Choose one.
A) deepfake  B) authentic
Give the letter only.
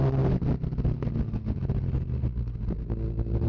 B